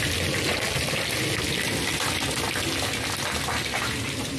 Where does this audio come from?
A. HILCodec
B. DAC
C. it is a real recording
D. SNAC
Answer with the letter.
C